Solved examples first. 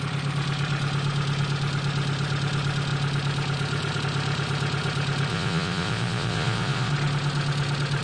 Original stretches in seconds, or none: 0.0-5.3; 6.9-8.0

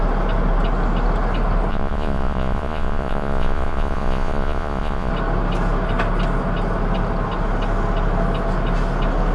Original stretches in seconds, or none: 0.0-1.7; 5.1-9.3

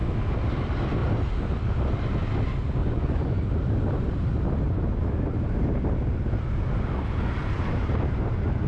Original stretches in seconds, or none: 0.0-2.8; 3.4-8.7

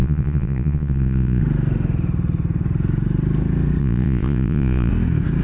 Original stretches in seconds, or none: 1.4-3.8; 4.9-5.4